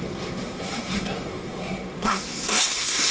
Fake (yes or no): yes